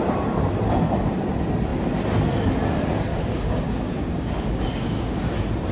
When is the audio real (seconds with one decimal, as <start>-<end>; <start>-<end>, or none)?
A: 0.0-3.1; 5.3-5.7